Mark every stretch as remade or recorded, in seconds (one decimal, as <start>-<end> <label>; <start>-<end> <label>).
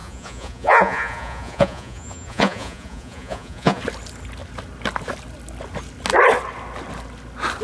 0.0-3.8 remade; 3.8-7.6 recorded